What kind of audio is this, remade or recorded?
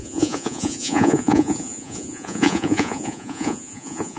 remade